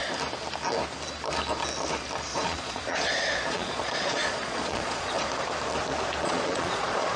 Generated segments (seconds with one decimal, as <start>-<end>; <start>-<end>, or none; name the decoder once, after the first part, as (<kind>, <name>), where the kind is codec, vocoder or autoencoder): 2.3-5.2 (vocoder, Vocos); 6.2-7.2